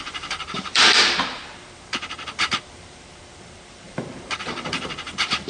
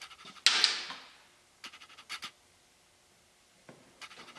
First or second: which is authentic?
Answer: second